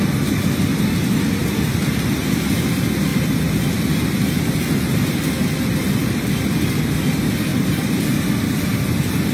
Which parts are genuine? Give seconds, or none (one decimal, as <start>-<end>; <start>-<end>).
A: 0.0-1.4; 2.3-7.5